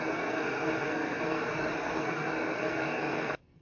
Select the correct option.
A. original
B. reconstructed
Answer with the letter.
B